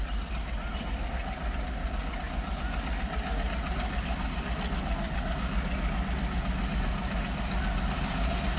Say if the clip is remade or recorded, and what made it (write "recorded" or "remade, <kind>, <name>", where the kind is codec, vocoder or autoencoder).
recorded